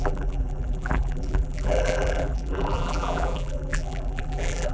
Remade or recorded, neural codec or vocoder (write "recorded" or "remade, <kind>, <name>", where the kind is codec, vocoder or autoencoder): remade, vocoder, BigVGAN v2